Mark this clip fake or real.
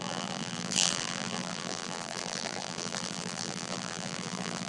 fake